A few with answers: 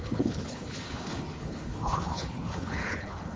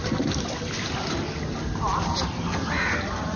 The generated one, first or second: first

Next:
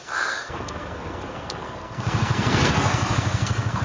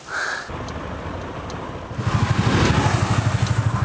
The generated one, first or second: first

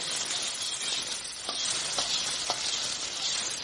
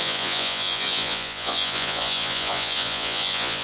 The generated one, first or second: second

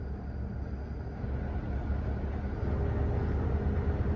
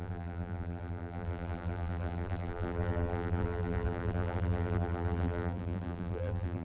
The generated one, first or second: second